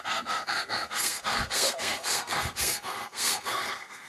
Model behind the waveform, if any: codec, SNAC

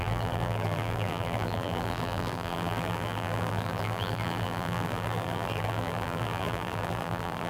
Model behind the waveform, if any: vocoder, BigVGAN v2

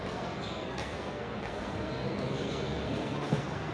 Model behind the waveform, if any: codec, SNAC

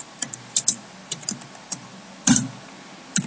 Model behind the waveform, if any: none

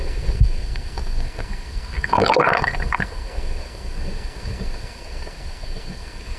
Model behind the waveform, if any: codec, SNAC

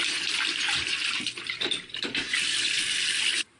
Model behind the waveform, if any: vocoder, BigVGAN v2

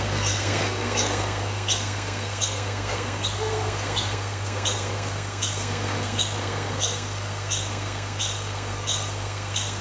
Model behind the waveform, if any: codec, SNAC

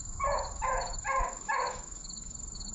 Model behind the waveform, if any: autoencoder, DAC-VAE